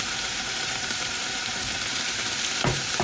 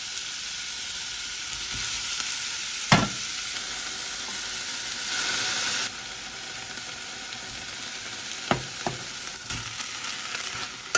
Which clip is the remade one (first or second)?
first